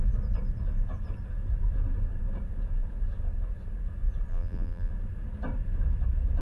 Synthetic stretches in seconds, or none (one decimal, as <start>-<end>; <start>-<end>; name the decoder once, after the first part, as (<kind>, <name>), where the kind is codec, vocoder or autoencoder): 4.3-4.9 (vocoder, BigVGAN v2)